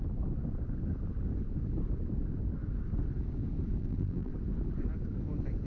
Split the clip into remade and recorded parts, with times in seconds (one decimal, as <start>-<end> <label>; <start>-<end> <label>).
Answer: 0.0-3.8 recorded; 3.8-4.3 remade; 4.3-5.7 recorded